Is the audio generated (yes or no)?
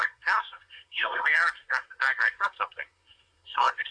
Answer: yes